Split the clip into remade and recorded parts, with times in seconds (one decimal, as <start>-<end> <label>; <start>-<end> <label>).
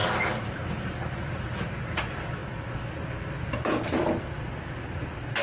0.0-5.4 recorded